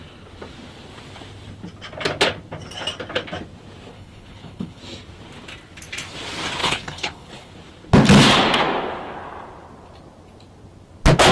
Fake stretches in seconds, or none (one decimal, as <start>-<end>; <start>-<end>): 3.9-4.8; 6.6-7.5